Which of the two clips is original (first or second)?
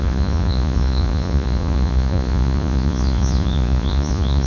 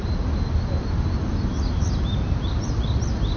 second